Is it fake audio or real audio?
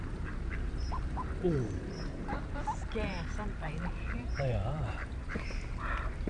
fake